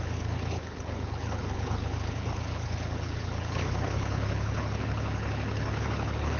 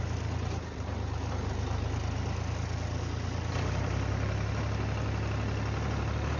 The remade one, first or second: first